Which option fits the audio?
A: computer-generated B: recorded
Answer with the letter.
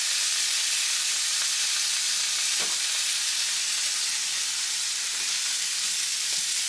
B